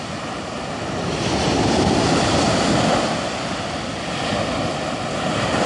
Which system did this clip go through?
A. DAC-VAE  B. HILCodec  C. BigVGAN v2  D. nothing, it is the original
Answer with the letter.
D